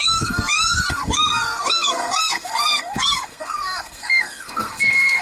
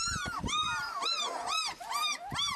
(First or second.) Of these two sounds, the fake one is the first